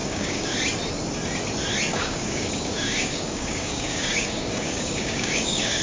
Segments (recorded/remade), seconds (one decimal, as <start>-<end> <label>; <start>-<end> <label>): 0.0-0.5 remade; 0.5-1.9 recorded; 1.9-5.8 remade